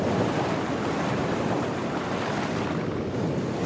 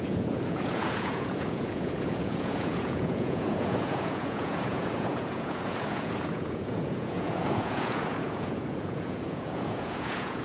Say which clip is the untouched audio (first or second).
first